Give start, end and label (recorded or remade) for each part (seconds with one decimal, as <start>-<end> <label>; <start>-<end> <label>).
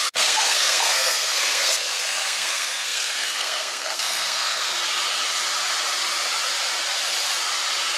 0.0-4.7 remade; 4.7-8.0 recorded